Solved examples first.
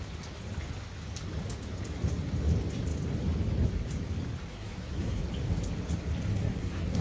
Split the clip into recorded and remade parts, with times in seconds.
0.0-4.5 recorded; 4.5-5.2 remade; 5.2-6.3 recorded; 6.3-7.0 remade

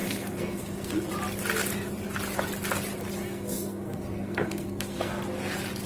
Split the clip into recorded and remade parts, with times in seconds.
0.0-1.1 remade; 1.1-3.2 recorded; 3.2-5.2 remade; 5.2-5.9 recorded

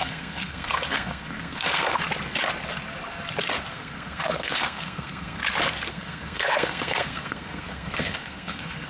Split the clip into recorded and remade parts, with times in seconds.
0.0-2.0 remade; 2.0-3.7 recorded; 3.7-5.4 remade; 5.4-5.9 recorded; 5.9-8.9 remade

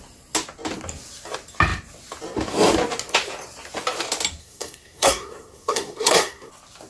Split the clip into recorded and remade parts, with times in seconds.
0.0-4.4 recorded; 4.4-6.5 remade; 6.5-6.9 recorded

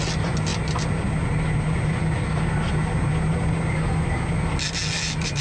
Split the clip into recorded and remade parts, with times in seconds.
0.0-5.4 recorded

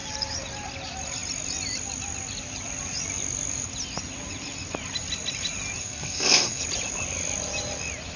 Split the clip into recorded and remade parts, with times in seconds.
0.0-5.8 recorded; 5.8-6.6 remade; 6.6-8.2 recorded

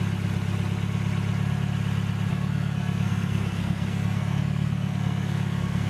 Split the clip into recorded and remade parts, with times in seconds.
0.0-2.3 recorded; 2.3-5.9 remade

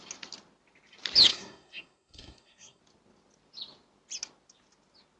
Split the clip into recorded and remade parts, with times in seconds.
0.0-1.3 recorded; 1.3-2.8 remade; 2.8-5.2 recorded